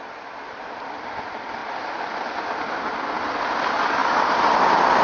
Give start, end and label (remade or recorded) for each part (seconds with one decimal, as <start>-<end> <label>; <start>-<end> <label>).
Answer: 0.0-5.0 recorded